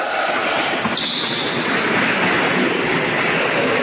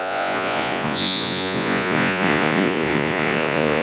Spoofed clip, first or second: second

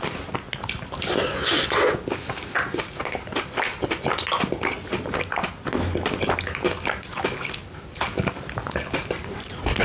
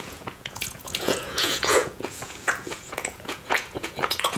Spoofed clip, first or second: second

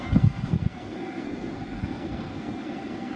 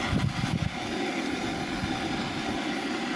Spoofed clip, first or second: first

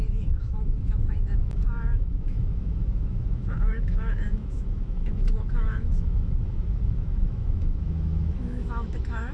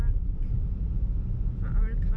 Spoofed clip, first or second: first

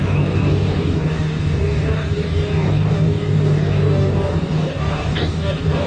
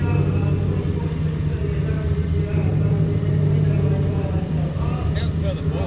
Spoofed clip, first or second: first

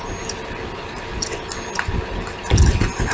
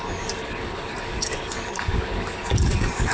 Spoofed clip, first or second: second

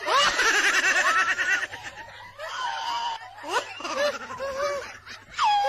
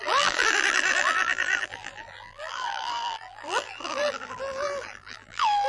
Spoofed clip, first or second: second